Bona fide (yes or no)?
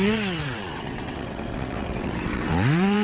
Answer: no